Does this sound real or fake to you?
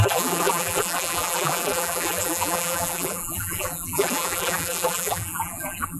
fake